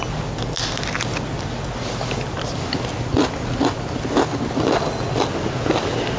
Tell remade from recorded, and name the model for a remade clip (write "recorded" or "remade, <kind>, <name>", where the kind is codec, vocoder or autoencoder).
recorded